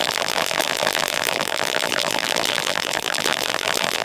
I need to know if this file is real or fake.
fake